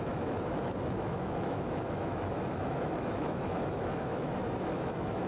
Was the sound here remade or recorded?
remade